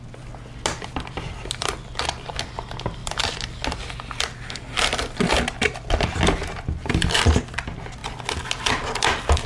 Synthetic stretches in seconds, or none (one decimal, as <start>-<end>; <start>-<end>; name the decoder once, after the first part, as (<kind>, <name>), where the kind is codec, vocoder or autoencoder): none